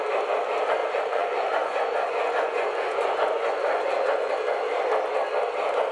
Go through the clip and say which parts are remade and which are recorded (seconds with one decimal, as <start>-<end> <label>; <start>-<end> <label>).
0.0-0.8 recorded; 0.8-4.3 remade; 4.3-5.9 recorded

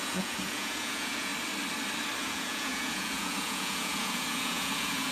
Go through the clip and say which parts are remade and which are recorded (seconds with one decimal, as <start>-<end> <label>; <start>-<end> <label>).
0.0-1.3 remade; 1.3-2.2 recorded; 2.2-5.1 remade

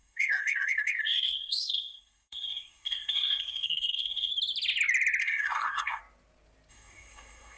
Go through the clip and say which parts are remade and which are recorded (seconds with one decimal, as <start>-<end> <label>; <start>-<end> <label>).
0.0-4.3 remade; 4.3-5.2 recorded; 5.2-6.0 remade; 6.0-6.7 recorded; 6.7-7.6 remade

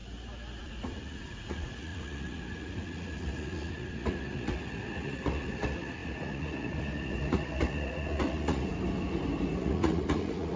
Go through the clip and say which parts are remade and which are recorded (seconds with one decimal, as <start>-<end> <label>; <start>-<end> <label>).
0.0-0.6 recorded; 0.6-8.7 remade; 8.7-9.6 recorded; 9.6-10.6 remade

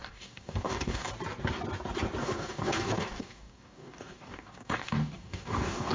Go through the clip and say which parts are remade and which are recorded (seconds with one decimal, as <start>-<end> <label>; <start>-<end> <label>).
0.0-1.1 remade; 1.1-2.2 recorded; 2.2-5.9 remade

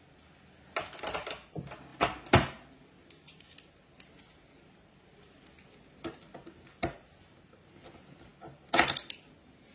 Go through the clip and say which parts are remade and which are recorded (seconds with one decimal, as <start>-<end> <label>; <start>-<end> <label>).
0.0-9.7 recorded

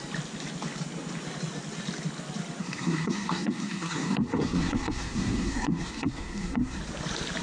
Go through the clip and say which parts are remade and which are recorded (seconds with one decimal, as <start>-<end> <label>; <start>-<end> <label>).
0.0-2.6 recorded; 2.6-6.8 remade; 6.8-7.4 recorded